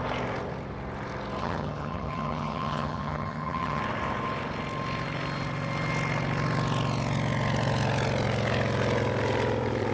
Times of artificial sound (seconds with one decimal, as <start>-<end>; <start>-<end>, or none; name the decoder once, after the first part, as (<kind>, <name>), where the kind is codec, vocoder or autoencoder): 1.4-3.8 (vocoder, HiFi-GAN)